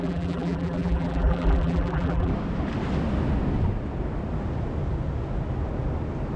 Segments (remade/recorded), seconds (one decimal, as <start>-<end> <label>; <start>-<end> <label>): 0.0-2.3 remade; 2.3-6.4 recorded